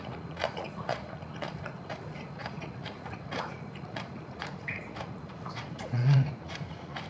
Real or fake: fake